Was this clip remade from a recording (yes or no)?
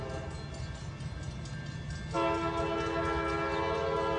no